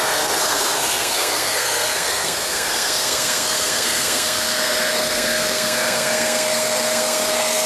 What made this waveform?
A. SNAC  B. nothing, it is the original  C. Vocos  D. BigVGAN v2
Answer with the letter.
A